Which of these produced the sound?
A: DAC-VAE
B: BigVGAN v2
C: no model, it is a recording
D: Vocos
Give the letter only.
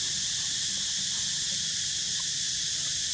C